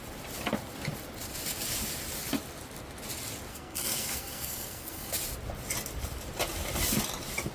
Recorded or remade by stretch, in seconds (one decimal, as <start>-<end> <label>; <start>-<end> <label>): 0.0-3.5 recorded; 3.5-5.1 remade; 5.1-7.5 recorded